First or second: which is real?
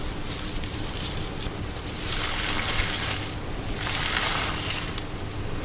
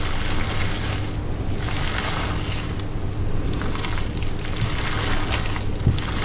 second